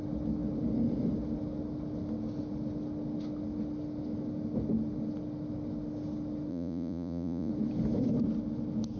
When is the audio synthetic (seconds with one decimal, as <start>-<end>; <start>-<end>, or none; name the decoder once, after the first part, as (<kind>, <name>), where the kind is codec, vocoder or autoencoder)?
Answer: 6.5-7.5 (vocoder, Vocos)